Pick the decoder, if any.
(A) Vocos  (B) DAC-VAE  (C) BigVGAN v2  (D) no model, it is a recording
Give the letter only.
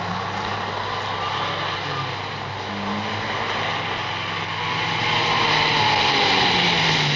D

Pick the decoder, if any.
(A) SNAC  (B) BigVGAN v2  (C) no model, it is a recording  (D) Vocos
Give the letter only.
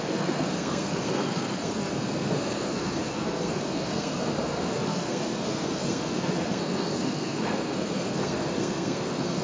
A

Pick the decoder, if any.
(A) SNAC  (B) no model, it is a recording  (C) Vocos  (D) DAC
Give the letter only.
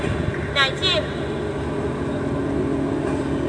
B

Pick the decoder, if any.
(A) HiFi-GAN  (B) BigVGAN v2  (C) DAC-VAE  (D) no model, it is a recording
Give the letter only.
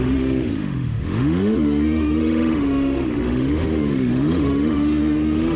C